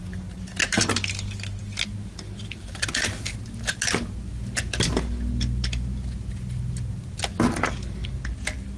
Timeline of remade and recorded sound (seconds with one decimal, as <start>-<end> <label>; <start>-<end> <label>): 0.0-8.8 recorded